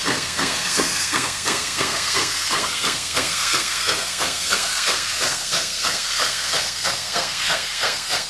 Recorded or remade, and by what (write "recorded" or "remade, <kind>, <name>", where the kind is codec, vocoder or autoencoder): remade, codec, SNAC